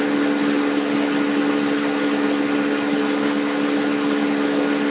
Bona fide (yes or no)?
yes